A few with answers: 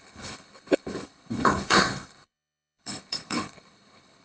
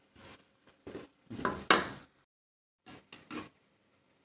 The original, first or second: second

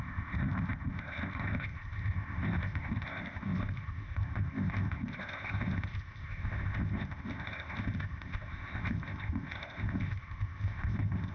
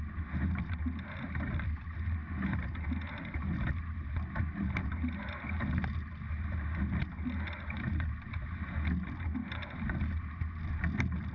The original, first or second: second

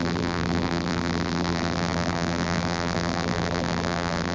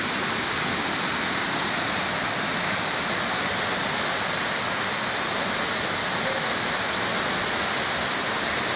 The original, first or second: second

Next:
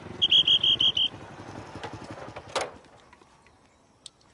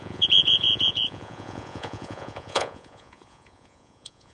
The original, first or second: first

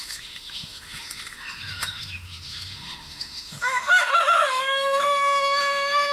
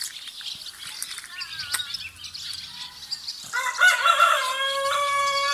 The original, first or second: second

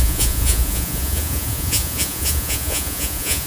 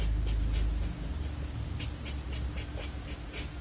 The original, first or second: second